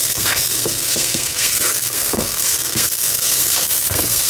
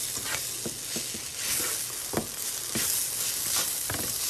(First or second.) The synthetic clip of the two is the first